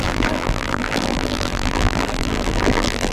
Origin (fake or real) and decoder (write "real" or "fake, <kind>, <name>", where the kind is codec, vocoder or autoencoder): fake, vocoder, BigVGAN v2